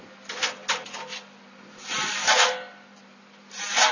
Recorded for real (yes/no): yes